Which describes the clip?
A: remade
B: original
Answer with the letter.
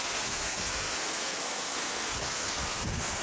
A